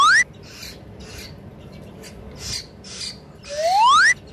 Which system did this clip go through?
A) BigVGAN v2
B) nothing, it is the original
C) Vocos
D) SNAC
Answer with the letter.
B